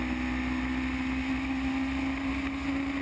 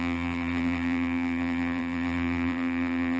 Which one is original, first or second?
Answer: first